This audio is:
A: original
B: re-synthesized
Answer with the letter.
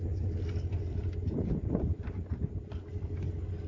A